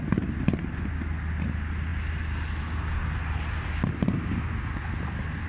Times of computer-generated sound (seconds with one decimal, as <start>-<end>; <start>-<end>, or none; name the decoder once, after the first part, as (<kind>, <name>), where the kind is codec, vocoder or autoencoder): none